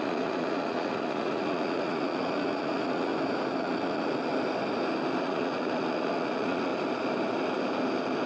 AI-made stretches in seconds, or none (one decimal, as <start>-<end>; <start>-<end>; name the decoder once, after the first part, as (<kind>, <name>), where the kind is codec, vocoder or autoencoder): 0.0-3.1 (vocoder, Vocos); 3.6-4.3; 5.2-6.7